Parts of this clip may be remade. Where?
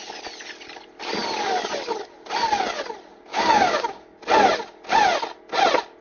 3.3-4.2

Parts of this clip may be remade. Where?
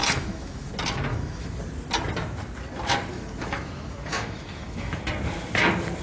0.0-0.7; 1.1-1.6; 3.1-5.0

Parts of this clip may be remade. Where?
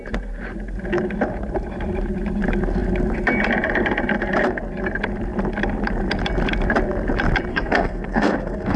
7.5-8.8